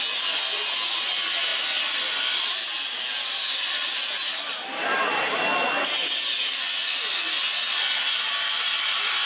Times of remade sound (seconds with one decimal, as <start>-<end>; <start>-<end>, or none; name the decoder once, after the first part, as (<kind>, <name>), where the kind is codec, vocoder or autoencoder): none